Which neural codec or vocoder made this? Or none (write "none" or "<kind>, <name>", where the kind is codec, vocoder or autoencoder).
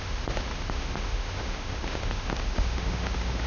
autoencoder, DAC-VAE